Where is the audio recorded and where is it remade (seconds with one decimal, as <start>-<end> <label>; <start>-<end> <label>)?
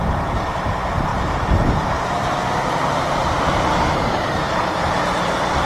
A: 0.0-1.1 recorded; 1.1-4.5 remade; 4.5-5.7 recorded